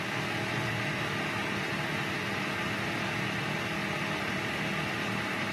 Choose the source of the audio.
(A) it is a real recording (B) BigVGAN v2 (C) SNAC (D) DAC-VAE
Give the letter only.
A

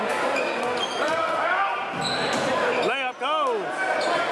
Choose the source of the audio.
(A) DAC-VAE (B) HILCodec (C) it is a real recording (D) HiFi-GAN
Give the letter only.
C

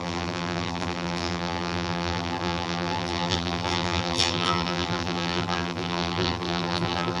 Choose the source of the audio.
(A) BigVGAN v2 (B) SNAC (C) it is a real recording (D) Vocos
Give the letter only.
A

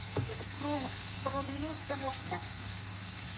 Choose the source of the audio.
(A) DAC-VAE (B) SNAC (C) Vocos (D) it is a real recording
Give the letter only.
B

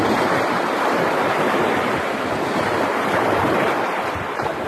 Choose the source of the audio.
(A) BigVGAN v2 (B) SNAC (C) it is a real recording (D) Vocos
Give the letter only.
A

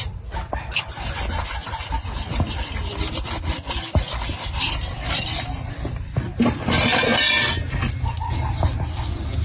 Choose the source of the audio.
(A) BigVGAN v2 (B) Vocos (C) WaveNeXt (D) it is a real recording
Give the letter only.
D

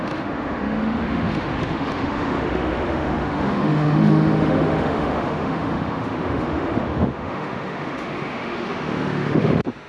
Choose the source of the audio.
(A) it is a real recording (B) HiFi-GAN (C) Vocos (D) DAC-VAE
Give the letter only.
D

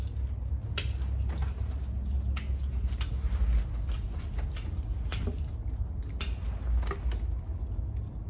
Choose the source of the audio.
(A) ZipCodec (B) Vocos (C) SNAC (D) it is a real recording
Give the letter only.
D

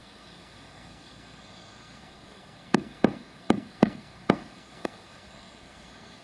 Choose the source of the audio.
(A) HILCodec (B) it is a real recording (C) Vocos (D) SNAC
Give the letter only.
D